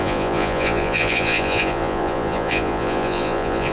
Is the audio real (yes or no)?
no